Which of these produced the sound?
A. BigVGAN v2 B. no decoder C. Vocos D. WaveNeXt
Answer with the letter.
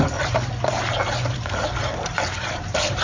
A